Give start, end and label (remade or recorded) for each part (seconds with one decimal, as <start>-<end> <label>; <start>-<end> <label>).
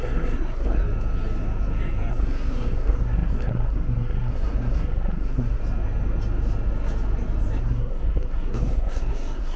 0.0-0.8 remade; 0.8-2.1 recorded; 2.1-5.6 remade; 5.6-7.6 recorded; 7.6-9.6 remade